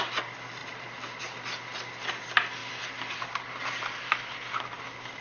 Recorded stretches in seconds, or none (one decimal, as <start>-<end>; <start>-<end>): 0.0-5.2